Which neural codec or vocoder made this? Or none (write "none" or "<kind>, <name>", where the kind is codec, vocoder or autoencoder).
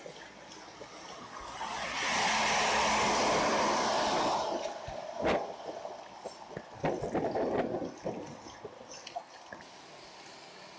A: none